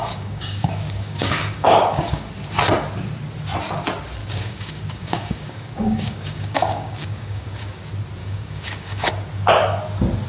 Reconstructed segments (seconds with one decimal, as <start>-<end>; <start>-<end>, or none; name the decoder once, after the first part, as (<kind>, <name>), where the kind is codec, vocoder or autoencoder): 0.0-2.3 (codec, DAC); 4.2-7.8; 8.2-9.1

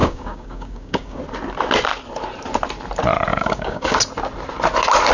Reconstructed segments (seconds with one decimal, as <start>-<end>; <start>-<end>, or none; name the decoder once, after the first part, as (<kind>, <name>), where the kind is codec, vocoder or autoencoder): 0.0-1.2 (codec, DAC); 3.3-4.0

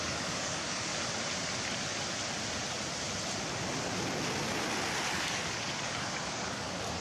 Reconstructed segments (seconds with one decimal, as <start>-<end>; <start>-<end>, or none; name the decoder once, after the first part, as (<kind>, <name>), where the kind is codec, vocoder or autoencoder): 0.0-0.9 (codec, DAC); 5.1-7.0